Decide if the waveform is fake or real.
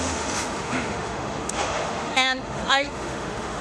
fake